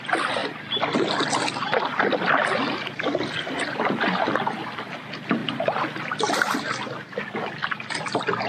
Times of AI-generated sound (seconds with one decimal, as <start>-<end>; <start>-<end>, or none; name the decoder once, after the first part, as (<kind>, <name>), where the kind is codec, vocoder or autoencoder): none